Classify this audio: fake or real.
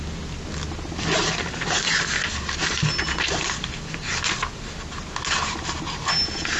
real